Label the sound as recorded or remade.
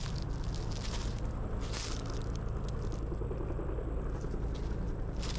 recorded